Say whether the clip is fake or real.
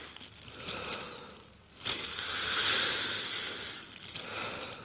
real